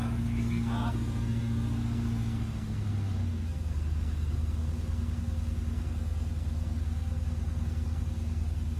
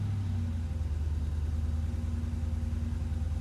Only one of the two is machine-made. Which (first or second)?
first